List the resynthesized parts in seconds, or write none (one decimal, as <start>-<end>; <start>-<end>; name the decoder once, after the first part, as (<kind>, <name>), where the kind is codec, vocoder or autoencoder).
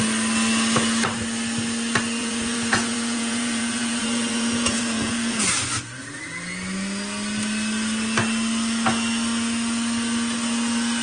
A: 2.2-5.4 (vocoder, Vocos)